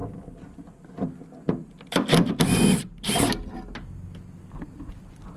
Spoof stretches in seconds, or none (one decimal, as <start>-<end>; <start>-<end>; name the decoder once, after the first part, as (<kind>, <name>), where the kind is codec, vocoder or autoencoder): none